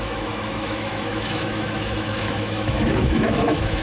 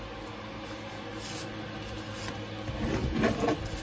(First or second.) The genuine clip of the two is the second